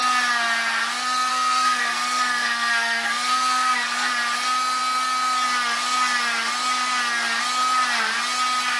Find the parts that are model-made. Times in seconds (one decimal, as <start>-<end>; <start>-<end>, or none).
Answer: 1.3-4.1